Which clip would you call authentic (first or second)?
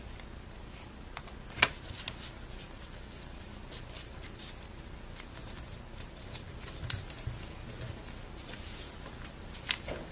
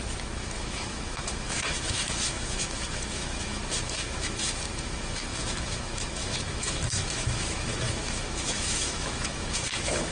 first